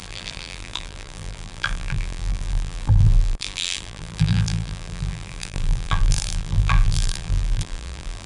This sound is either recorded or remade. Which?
remade